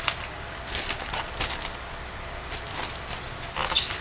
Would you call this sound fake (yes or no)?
no